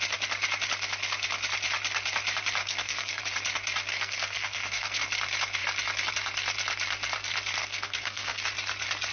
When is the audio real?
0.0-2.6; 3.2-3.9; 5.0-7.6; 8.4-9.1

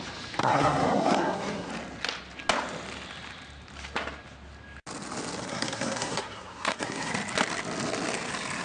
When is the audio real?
0.0-0.4; 1.7-5.5; 7.1-8.6

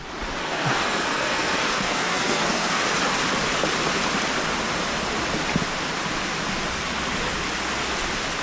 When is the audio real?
0.0-0.4; 2.8-8.4